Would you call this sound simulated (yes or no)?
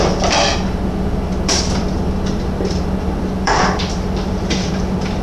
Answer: yes